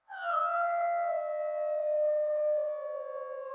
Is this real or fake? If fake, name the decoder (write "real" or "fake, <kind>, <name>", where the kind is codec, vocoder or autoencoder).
fake, vocoder, WaveNeXt